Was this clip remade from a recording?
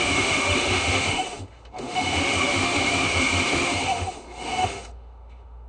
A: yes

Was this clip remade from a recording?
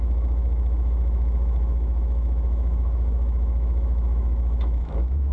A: yes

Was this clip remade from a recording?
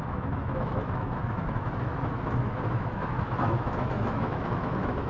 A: yes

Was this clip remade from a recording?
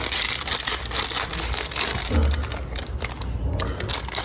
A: no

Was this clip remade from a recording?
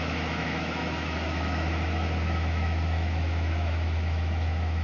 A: yes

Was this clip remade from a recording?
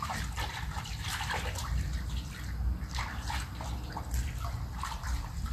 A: no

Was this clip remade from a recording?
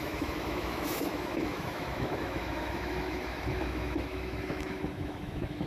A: yes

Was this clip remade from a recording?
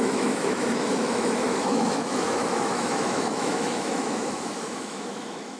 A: yes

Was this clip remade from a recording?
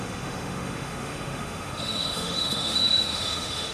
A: yes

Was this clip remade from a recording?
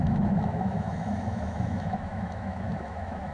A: yes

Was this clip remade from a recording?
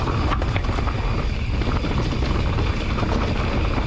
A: no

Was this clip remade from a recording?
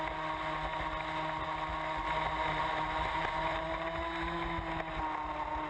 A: no